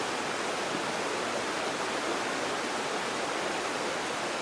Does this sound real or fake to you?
real